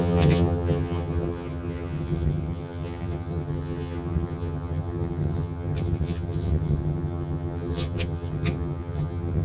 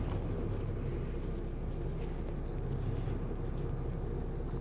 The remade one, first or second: first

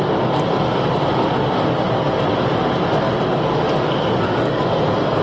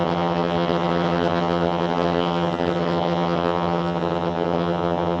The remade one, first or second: second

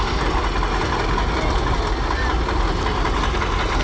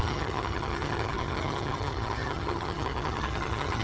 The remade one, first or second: second